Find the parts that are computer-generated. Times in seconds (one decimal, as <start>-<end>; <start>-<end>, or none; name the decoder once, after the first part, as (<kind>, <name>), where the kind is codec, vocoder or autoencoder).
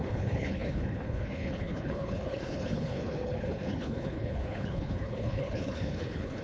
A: 0.0-6.4 (codec, HILCodec)